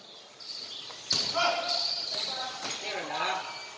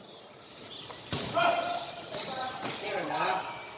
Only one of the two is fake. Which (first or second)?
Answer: second